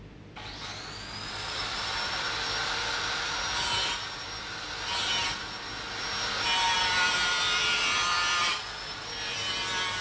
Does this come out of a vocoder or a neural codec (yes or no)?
no